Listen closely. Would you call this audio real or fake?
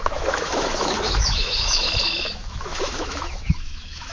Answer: fake